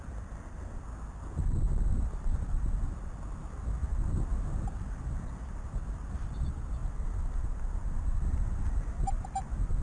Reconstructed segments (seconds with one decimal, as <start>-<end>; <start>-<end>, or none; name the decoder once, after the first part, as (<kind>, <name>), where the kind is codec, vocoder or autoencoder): none